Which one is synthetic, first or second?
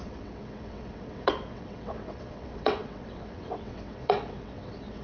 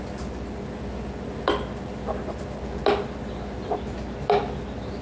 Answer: first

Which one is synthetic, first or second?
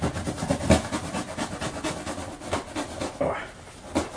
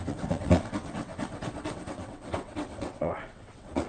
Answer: second